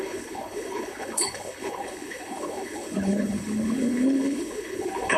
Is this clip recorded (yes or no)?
no